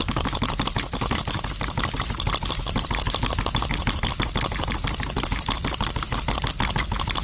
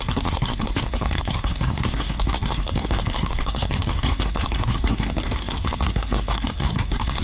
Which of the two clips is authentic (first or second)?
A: first